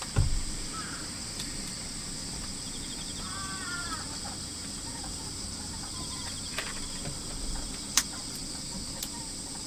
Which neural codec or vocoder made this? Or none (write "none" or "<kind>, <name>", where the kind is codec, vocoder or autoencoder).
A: vocoder, BigVGAN v2